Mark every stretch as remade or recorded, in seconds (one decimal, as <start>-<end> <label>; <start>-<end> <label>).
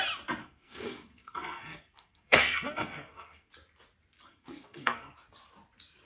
0.0-0.4 recorded; 0.4-3.5 remade; 3.5-4.3 recorded; 4.3-5.1 remade; 5.1-6.1 recorded